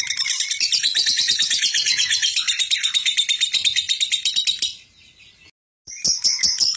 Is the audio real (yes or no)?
yes